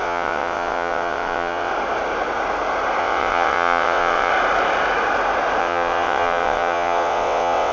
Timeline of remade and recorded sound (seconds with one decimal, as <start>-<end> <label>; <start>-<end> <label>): 0.0-1.7 remade; 1.7-3.0 recorded; 3.0-4.3 remade; 4.3-5.6 recorded; 5.6-7.7 remade